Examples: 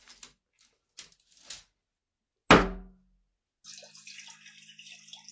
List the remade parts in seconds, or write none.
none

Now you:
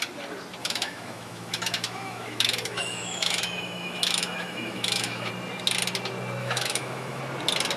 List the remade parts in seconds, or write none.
0.6-5.3; 6.4-7.2

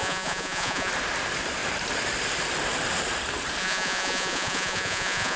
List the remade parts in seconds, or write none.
0.0-0.9; 3.6-5.4

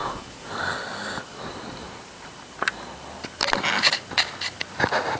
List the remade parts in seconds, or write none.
0.0-0.5

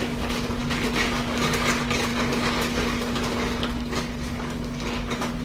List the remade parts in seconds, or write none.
0.0-5.4